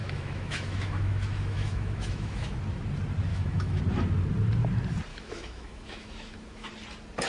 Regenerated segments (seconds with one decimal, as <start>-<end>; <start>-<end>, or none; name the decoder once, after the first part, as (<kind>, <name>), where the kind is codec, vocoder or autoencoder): 0.0-2.6 (autoencoder, DAC-VAE); 3.3-3.8; 5.1-6.7

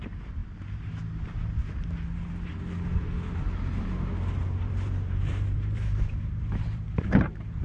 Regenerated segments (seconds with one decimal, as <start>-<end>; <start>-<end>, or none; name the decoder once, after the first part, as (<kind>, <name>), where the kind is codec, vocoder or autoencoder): 0.0-0.4 (vocoder, BigVGAN v2); 3.8-7.6

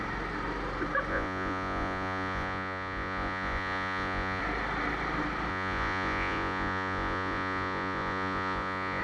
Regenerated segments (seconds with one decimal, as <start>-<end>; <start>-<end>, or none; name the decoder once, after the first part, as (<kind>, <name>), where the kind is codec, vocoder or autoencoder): 1.1-4.4 (vocoder, Vocos); 5.5-9.0

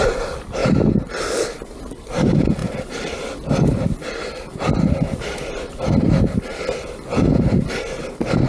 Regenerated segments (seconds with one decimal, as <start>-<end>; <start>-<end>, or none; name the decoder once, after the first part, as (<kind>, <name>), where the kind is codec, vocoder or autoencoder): 0.6-1.4 (vocoder, BigVGAN v2); 2.6-7.7

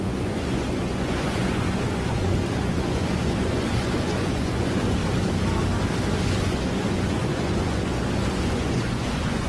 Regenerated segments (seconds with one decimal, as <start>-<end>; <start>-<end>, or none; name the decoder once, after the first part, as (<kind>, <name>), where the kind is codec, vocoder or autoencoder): 0.0-5.0 (vocoder, Vocos); 6.2-9.5